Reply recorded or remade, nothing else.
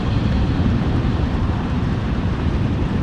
remade